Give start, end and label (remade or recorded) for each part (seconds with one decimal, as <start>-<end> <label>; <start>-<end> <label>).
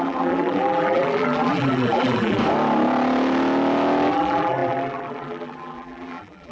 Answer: 0.0-2.4 remade; 2.4-4.1 recorded; 4.1-6.5 remade